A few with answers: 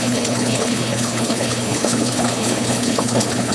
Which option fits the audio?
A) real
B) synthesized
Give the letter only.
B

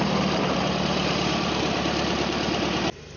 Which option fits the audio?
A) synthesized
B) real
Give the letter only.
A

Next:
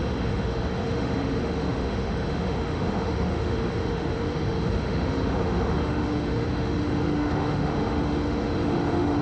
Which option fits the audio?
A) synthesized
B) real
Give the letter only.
A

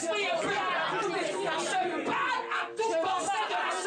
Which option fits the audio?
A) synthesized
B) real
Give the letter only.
B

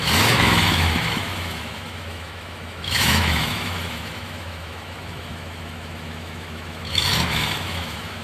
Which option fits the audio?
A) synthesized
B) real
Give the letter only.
A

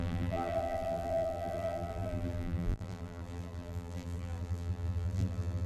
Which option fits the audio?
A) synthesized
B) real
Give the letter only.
A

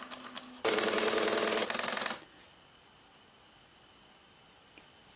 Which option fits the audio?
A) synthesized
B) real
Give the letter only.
B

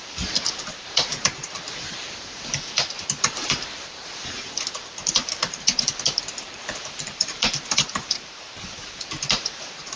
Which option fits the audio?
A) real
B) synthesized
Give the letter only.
B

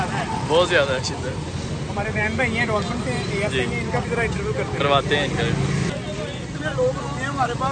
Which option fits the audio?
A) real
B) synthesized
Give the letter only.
A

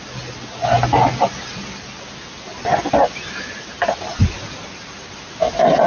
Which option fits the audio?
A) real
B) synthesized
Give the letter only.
A